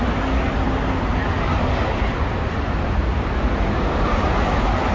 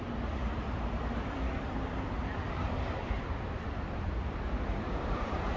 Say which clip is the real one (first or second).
first